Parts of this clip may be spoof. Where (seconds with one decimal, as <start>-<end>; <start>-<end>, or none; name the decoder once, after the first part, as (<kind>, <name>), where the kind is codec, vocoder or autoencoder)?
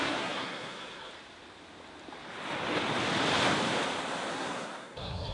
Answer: 0.0-1.1 (codec, SNAC); 4.3-5.3